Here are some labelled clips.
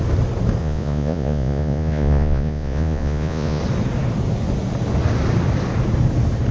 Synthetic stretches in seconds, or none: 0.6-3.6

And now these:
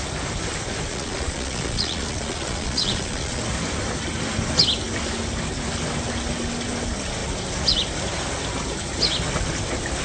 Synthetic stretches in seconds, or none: 0.9-3.4

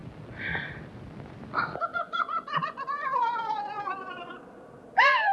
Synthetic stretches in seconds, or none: 1.9-4.3

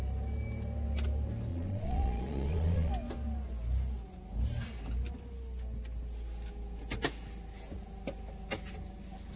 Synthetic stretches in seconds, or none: 1.5-2.9

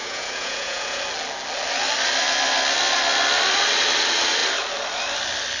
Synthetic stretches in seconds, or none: 0.0-1.0

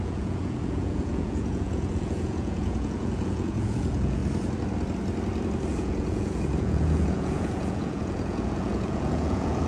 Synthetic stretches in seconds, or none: 0.0-4.2; 5.7-9.7

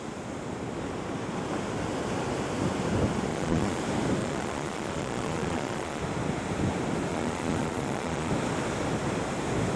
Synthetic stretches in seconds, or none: 3.3-3.8; 4.2-6.0; 7.1-8.3

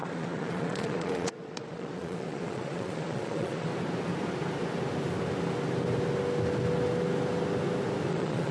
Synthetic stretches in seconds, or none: 0.0-3.7; 8.1-8.5